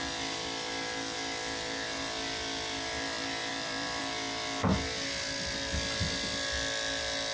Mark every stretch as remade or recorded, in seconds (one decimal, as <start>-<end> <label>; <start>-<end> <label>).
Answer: 0.0-3.5 recorded; 3.5-4.0 remade; 4.0-7.3 recorded